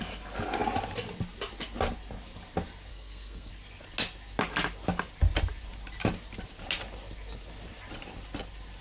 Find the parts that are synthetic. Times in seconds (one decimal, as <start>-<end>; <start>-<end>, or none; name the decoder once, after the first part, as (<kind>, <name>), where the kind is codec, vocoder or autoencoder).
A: 2.9-3.5 (codec, SNAC)